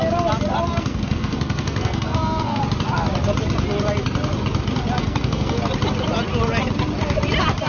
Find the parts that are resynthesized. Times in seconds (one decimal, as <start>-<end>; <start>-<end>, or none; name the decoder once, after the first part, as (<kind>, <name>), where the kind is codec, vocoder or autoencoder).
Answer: 0.7-2.6 (codec, SNAC); 5.0-5.6